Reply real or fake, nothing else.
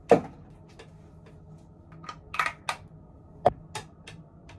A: real